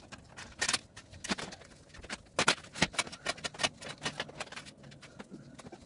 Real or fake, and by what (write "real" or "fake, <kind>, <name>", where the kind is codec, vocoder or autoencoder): real